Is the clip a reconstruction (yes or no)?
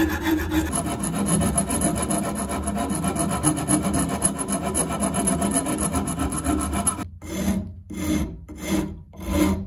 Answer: no